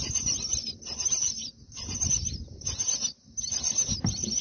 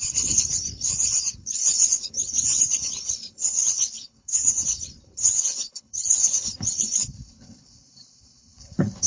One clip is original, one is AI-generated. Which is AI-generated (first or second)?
second